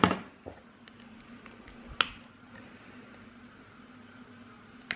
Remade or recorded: recorded